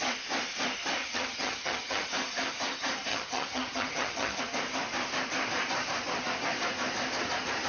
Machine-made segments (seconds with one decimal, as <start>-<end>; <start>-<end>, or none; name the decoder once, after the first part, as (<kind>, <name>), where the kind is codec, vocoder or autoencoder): 1.0-2.1 (vocoder, HiFi-GAN); 3.1-4.4